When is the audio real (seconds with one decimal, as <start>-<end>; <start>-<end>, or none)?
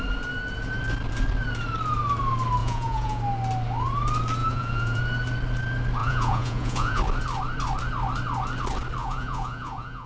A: 0.0-2.6; 3.2-4.4; 5.0-6.0; 7.0-9.0